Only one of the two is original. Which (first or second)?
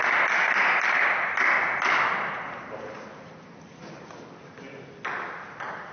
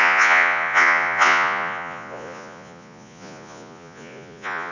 first